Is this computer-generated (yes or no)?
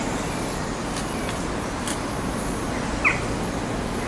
no